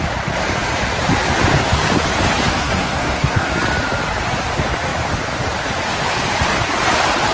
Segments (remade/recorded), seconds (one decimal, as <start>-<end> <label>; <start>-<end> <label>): 0.0-2.5 recorded; 2.5-3.5 remade; 3.5-7.3 recorded